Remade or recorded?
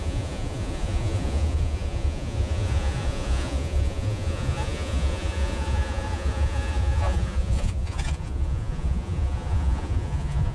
remade